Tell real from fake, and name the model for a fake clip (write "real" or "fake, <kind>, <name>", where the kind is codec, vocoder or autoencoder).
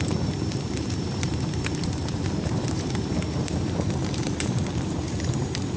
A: fake, vocoder, BigVGAN v2